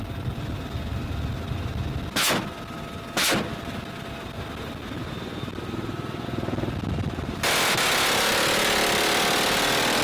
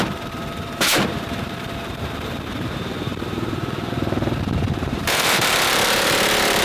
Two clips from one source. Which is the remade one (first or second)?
second